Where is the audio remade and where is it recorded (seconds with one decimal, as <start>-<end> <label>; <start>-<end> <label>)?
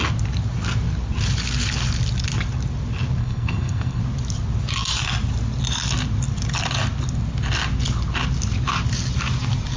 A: 0.0-3.2 recorded; 3.2-4.0 remade; 4.0-9.8 recorded